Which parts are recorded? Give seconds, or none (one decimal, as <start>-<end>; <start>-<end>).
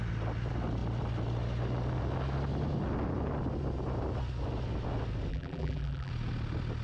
0.0-5.3; 6.1-6.8